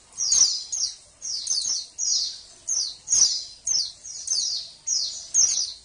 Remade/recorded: recorded